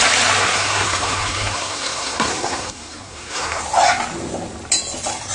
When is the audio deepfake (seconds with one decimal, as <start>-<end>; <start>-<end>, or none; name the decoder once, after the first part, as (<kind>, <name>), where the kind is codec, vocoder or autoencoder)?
0.4-3.6 (codec, SNAC)